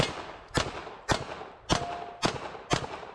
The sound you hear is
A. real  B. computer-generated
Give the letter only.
A